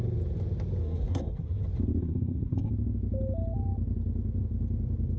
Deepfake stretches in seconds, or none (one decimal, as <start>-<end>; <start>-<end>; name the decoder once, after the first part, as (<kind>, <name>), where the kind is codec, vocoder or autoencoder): 0.8-1.6 (codec, SNAC); 2.0-2.7